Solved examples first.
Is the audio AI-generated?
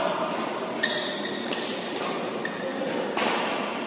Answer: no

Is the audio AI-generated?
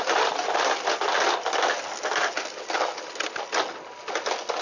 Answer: no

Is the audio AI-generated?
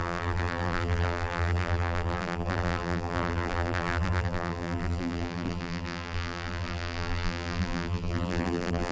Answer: yes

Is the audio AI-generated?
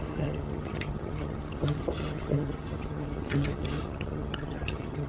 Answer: yes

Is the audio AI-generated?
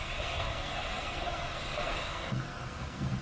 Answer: yes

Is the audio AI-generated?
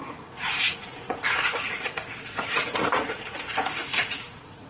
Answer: yes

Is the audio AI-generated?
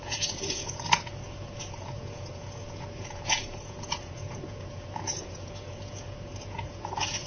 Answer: yes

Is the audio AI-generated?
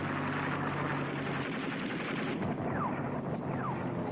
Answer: no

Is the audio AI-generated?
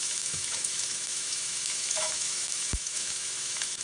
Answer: yes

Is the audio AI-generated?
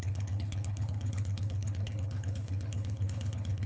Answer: yes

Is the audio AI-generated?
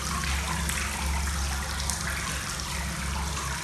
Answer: no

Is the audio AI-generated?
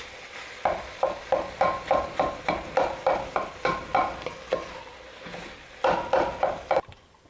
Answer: no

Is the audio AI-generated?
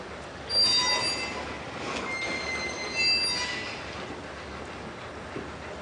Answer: no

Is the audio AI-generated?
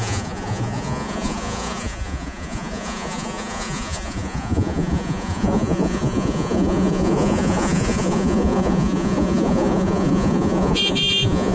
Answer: yes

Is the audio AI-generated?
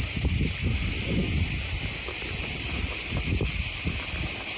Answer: no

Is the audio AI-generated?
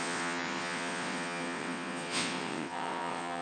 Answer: yes